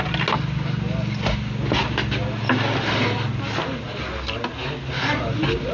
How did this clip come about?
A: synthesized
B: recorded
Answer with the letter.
B